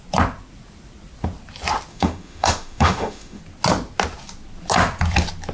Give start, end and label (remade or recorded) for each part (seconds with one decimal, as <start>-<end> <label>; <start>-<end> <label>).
0.0-1.9 recorded; 1.9-3.4 remade; 3.4-5.5 recorded